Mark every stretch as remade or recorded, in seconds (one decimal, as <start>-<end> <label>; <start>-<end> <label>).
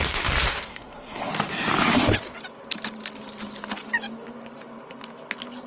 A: 0.0-0.7 recorded; 0.7-1.3 remade; 1.3-5.7 recorded